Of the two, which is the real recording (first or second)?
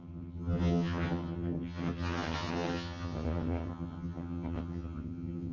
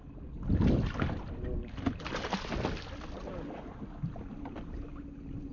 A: second